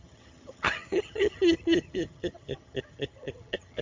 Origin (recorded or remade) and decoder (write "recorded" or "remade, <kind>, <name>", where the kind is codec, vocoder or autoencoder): remade, vocoder, HiFi-GAN